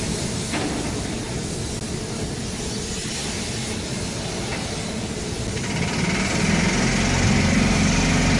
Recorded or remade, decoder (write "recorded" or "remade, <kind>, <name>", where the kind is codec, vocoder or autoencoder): recorded